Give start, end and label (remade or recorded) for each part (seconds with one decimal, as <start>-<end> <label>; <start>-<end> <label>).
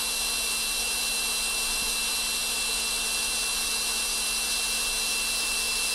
0.0-5.9 recorded